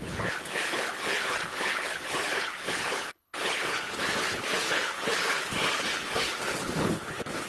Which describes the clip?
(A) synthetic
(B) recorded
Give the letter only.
A